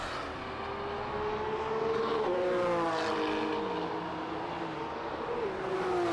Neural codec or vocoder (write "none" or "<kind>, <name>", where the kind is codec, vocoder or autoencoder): none